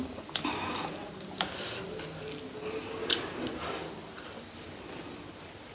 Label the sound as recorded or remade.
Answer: recorded